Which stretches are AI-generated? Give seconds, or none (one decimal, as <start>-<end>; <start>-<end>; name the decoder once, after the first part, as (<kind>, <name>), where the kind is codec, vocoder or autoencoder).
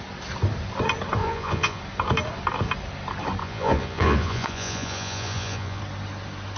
1.2-1.8 (vocoder, Vocos); 3.4-5.8